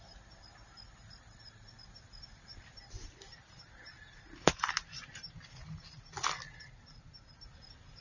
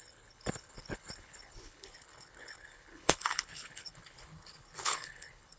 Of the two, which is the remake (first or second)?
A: second